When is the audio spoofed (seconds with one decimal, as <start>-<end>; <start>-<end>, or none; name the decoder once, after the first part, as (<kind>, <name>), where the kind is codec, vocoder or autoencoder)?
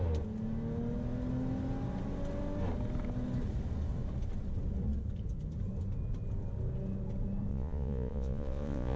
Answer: 7.5-9.0 (vocoder, Vocos)